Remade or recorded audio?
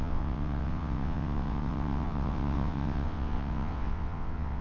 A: remade